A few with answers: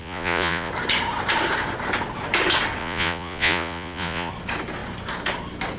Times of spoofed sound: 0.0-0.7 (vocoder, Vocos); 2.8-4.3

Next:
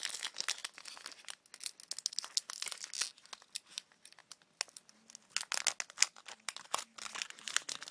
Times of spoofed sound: none